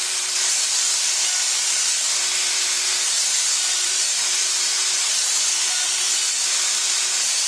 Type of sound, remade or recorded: recorded